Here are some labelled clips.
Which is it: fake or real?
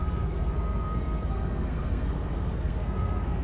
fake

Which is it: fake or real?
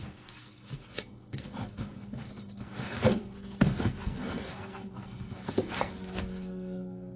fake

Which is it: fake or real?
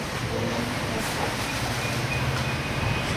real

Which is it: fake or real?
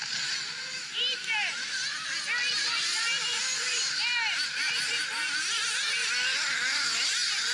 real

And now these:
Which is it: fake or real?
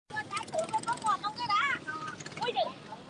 real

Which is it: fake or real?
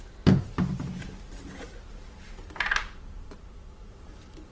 real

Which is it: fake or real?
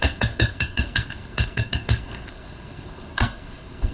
fake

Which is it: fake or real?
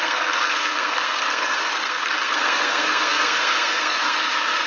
fake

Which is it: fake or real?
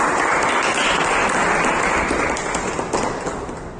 real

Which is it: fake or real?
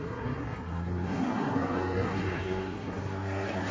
fake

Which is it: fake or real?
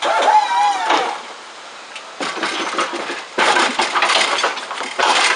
real